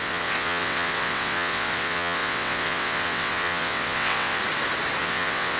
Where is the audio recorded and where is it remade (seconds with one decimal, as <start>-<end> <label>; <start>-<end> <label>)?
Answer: 0.0-4.4 remade; 4.4-5.0 recorded; 5.0-5.6 remade